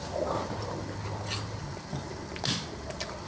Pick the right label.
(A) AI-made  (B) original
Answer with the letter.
B